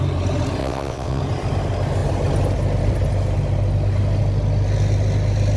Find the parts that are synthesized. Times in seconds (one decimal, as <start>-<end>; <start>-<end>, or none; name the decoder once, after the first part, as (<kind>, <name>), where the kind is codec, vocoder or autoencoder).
0.6-1.2 (vocoder, WaveNeXt)

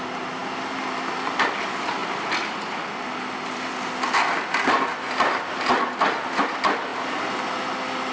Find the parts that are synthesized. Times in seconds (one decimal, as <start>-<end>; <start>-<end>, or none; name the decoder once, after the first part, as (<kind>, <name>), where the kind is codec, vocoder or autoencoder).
none